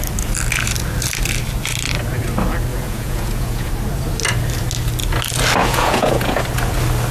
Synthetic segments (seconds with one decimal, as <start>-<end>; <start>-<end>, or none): 2.7-3.7; 5.6-6.4